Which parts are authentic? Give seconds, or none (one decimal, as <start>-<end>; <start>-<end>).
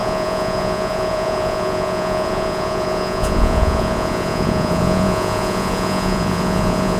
none